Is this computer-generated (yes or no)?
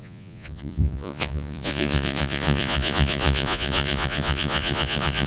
yes